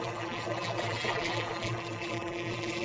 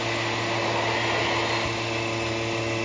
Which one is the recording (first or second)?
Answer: second